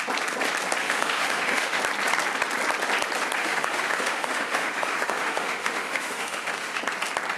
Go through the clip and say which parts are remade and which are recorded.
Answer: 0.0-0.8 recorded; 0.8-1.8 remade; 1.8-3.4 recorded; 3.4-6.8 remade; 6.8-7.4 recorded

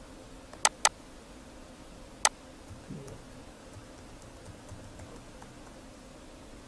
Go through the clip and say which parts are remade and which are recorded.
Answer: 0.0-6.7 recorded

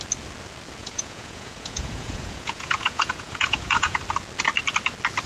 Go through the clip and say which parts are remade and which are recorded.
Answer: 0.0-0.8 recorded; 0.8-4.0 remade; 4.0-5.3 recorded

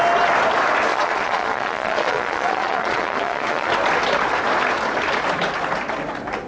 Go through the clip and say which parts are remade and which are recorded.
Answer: 0.0-0.9 recorded; 0.9-3.7 remade; 3.7-6.5 recorded